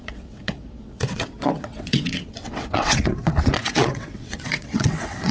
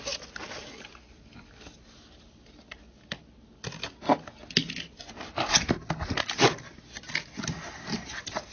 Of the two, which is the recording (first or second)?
second